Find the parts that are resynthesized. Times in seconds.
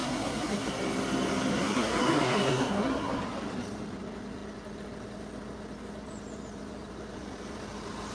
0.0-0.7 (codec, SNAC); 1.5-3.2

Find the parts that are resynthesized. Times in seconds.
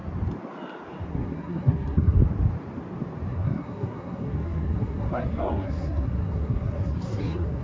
1.1-2.2 (codec, SNAC); 3.3-7.6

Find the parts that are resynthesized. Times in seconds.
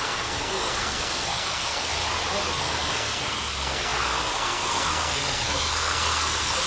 0.0-1.9 (codec, SNAC); 2.6-6.7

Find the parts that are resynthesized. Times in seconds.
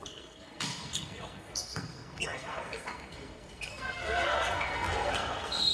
0.0-5.7 (codec, SNAC)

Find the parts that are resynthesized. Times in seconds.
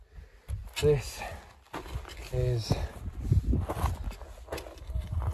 none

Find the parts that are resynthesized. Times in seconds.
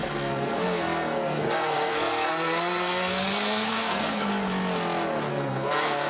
0.0-4.3 (codec, SNAC); 5.3-6.1